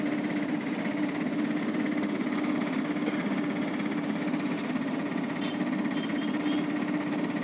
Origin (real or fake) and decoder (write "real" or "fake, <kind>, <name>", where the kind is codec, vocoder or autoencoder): real